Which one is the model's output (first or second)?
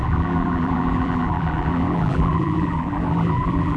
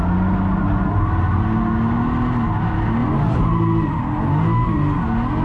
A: first